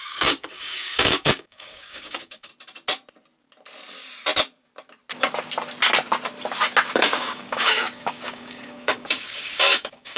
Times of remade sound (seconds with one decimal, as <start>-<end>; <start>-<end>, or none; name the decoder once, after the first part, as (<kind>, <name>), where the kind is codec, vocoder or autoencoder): 0.0-2.5 (codec, DAC); 6.9-10.2